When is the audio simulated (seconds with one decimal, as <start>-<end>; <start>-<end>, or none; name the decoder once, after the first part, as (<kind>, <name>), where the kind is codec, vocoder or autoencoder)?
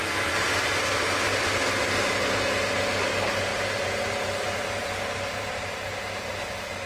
3.5-6.9 (vocoder, BigVGAN v2)